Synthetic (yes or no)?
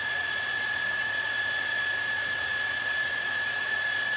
yes